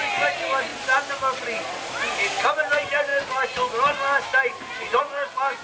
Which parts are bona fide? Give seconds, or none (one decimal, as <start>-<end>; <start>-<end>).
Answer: 0.0-5.6

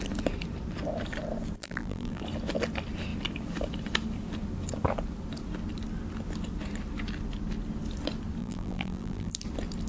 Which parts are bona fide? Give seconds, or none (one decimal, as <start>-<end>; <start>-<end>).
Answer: 0.0-1.6; 2.2-8.4; 9.3-9.9

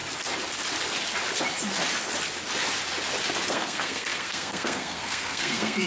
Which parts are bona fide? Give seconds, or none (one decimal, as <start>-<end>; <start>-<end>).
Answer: 0.0-3.5

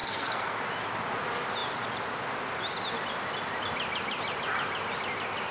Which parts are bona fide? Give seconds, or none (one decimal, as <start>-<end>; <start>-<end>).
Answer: 0.6-5.5